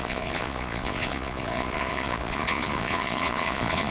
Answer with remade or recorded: remade